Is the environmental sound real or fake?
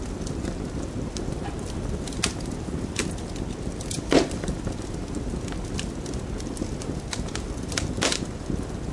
real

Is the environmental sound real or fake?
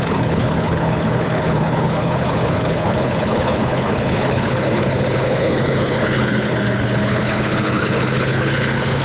fake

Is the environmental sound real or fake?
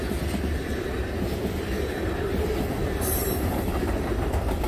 real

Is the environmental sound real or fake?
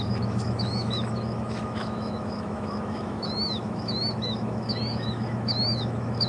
fake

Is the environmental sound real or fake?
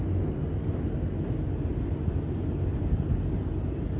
real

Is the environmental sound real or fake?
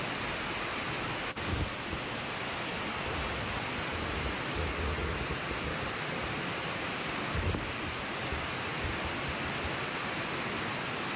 real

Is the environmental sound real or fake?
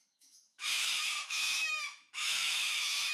fake